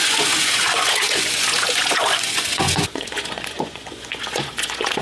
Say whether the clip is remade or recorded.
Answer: remade